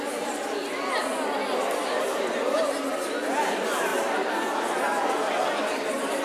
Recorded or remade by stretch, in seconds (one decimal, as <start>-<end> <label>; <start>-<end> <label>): 0.0-6.2 recorded